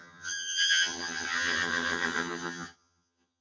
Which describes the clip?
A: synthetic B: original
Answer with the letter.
A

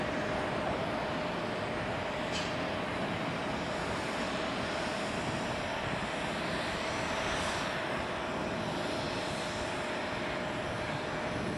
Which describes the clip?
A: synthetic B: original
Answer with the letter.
B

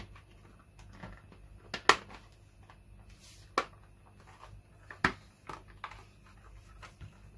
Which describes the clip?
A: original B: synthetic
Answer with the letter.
A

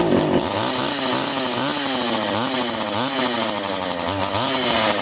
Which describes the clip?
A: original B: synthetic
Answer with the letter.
A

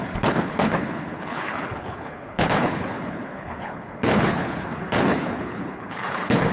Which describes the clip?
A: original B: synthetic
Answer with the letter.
B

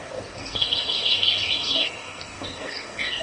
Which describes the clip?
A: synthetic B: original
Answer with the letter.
A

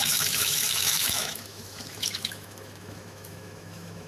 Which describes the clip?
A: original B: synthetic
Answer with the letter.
B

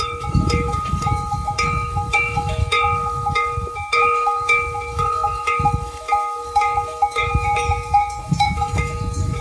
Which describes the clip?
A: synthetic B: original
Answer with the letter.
A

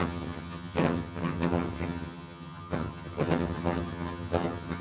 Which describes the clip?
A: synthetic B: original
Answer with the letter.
A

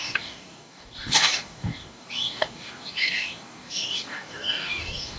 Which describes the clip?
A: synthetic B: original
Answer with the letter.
A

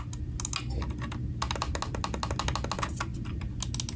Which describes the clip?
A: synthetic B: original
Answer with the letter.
B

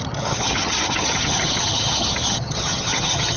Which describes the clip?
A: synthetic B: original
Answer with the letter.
A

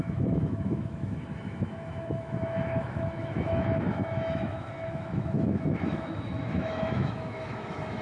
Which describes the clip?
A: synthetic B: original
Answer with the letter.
A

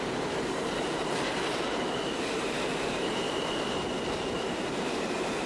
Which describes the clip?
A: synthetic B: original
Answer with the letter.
A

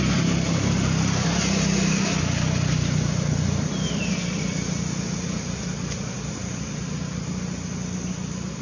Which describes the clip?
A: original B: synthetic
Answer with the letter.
A